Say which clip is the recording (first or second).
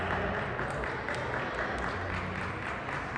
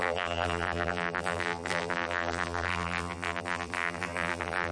first